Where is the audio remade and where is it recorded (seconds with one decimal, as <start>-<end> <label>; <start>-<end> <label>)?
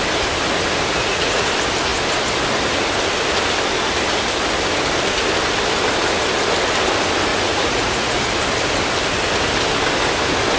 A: 0.0-1.0 recorded; 1.0-1.5 remade; 1.5-7.3 recorded; 7.3-8.2 remade; 8.2-10.6 recorded